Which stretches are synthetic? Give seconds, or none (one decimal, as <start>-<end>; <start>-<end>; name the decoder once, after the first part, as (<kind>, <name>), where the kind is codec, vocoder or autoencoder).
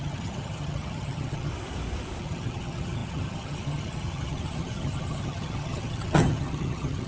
0.0-1.5 (vocoder, HiFi-GAN); 2.2-7.1